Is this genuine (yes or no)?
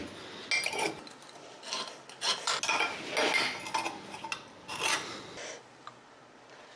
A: yes